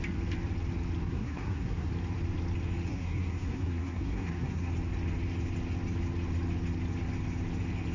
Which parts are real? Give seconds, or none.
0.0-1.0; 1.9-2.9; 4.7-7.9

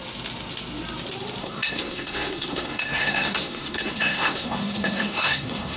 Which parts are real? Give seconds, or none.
0.0-1.4

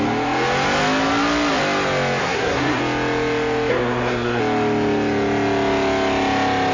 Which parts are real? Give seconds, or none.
0.0-2.2; 2.8-3.7; 4.4-6.7

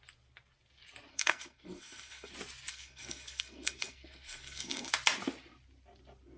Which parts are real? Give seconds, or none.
0.0-1.1; 2.3-2.7; 4.9-6.4

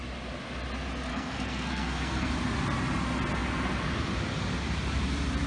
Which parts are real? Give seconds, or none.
0.0-1.1; 2.3-5.5

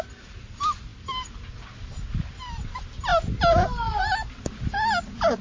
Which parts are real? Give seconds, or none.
0.0-5.4

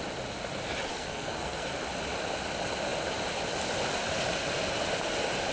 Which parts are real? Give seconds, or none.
0.0-0.9; 1.7-5.5

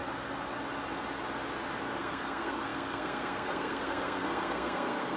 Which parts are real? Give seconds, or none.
0.0-2.0